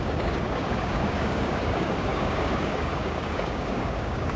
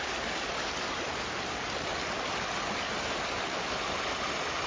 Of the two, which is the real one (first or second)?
second